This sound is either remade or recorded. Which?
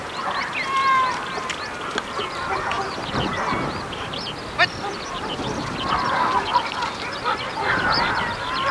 recorded